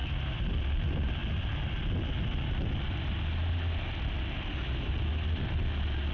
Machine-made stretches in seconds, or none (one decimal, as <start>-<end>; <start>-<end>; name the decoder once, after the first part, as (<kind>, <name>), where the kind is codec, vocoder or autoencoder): none